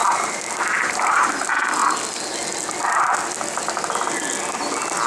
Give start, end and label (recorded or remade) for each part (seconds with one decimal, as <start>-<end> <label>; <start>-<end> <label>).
0.0-1.3 remade; 1.3-5.1 recorded